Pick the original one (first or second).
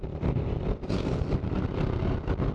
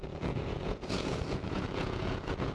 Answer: first